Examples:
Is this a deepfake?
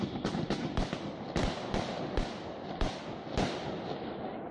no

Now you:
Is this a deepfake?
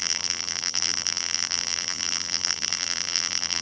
yes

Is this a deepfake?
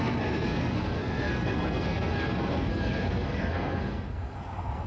yes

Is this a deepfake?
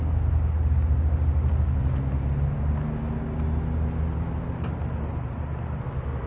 no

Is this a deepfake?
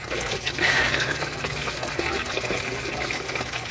yes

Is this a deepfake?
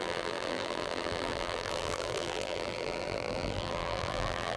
yes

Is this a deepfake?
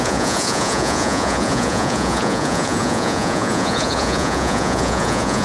yes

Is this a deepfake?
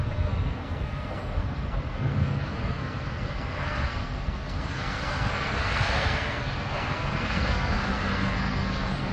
yes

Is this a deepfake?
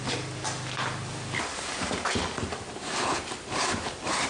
yes